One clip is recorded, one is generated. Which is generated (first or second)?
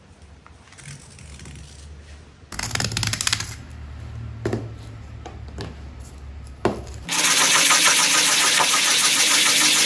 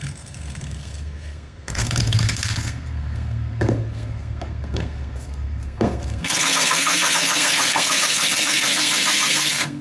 second